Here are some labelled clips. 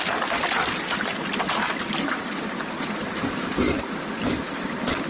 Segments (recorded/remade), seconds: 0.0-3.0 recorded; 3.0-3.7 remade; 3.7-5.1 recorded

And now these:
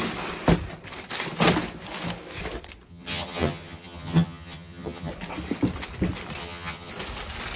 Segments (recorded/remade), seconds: 0.0-2.9 recorded; 2.9-5.1 remade; 5.1-6.4 recorded; 6.4-6.9 remade; 6.9-7.6 recorded

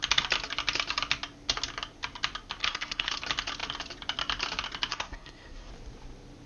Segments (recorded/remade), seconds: 0.0-2.6 recorded; 2.6-3.1 remade; 3.1-4.9 recorded; 4.9-5.7 remade; 5.7-6.5 recorded

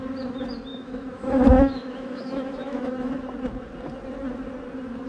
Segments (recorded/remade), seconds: 0.0-0.7 recorded; 0.7-3.1 remade; 3.1-5.1 recorded

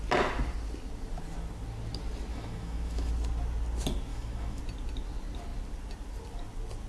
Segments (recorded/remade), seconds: 0.0-2.3 recorded; 2.3-3.1 remade; 3.1-4.1 recorded; 4.1-4.6 remade; 4.6-6.9 recorded

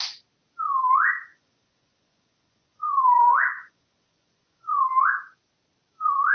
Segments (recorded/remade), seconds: 0.0-1.3 recorded; 1.3-4.8 remade; 4.8-6.3 recorded

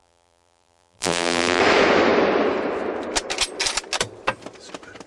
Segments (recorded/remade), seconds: 0.0-1.6 remade; 1.6-5.1 recorded

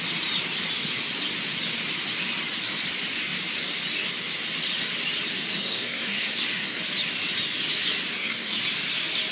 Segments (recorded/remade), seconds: 0.0-5.5 recorded; 5.5-6.8 remade; 6.8-8.1 recorded; 8.1-8.6 remade; 8.6-9.3 recorded